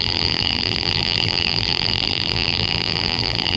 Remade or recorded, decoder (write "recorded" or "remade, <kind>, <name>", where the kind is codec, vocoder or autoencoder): remade, vocoder, BigVGAN v2